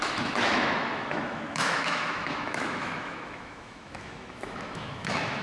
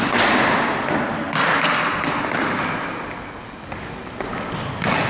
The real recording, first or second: second